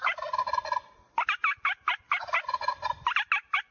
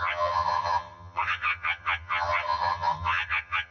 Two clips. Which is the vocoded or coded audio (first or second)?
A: second